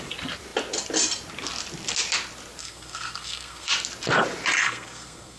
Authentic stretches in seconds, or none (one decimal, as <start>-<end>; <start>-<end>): 0.0-2.6; 3.7-4.6